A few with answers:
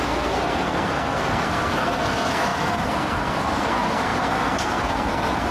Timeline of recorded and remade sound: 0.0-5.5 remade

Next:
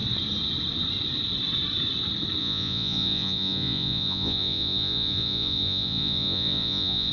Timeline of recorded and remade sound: 0.0-2.4 recorded; 2.4-7.1 remade